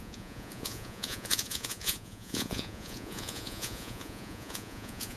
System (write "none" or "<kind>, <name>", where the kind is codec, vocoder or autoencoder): vocoder, Vocos